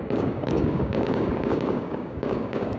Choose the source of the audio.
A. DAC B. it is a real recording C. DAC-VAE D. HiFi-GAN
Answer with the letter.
A